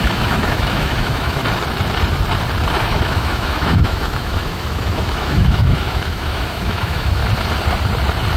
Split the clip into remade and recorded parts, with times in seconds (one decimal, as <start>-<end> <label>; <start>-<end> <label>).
0.0-1.4 remade; 1.4-2.8 recorded; 2.8-7.2 remade; 7.2-8.4 recorded

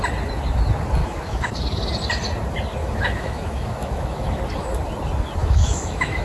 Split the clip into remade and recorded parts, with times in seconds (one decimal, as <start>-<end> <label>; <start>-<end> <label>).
0.0-1.0 recorded; 1.0-1.6 remade; 1.6-2.8 recorded; 2.8-4.4 remade; 4.4-5.4 recorded; 5.4-6.2 remade

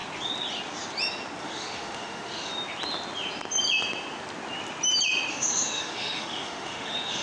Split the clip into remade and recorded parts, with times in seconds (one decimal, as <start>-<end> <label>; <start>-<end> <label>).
0.0-1.4 recorded; 1.4-2.5 remade; 2.5-5.3 recorded; 5.3-7.2 remade

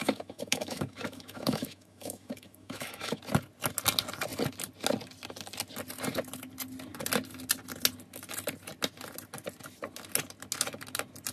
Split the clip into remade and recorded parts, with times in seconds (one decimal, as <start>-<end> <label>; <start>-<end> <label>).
0.0-3.2 remade; 3.2-11.3 recorded